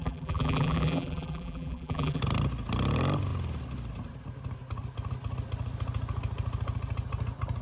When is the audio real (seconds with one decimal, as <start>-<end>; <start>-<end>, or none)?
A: 2.2-7.6